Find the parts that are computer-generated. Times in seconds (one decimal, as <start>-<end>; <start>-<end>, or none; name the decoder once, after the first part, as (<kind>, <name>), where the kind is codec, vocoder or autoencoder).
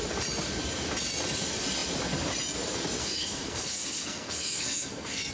3.0-5.3 (codec, SNAC)